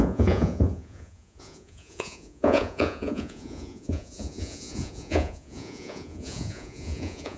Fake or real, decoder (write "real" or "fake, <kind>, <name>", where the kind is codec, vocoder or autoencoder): fake, vocoder, Vocos